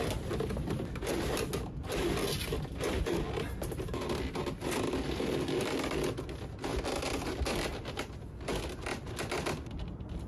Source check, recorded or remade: recorded